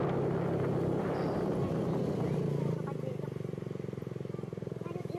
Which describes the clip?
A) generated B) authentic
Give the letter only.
B